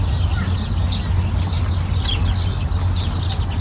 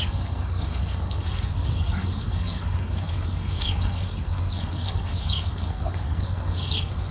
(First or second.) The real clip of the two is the first